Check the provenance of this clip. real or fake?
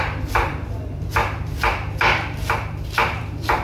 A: fake